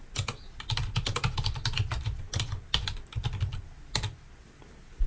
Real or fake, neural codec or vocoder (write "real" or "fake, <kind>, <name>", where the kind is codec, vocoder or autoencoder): real